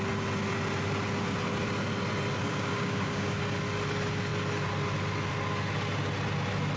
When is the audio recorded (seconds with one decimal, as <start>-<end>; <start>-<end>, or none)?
0.0-2.5; 3.4-6.8